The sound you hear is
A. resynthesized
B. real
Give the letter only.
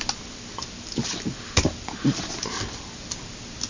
B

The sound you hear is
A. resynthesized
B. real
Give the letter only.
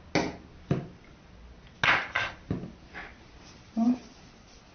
B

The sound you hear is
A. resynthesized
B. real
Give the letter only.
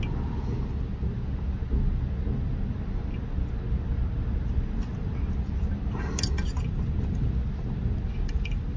B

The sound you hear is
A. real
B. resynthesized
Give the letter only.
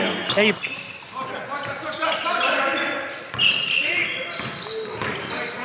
A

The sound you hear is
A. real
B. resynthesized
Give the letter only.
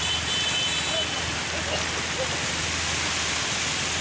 A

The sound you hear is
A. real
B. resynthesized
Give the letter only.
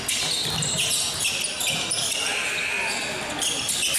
A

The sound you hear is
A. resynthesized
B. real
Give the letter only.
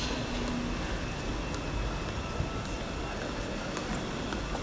B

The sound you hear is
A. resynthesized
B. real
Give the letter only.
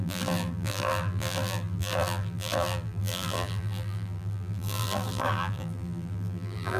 A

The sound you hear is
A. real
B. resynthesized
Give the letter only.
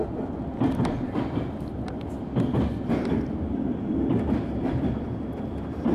A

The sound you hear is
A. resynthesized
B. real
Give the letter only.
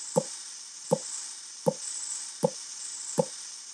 B